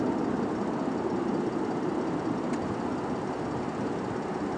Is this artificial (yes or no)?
no